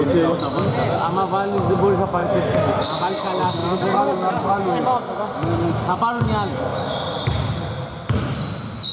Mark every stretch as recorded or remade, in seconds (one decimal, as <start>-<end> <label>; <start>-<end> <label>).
0.0-6.7 recorded; 6.7-7.3 remade; 7.3-8.9 recorded